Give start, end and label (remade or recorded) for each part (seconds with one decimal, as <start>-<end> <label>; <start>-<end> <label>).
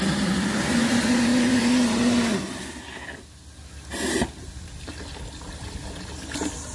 0.0-6.7 recorded